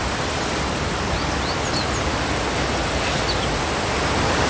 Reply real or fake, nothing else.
real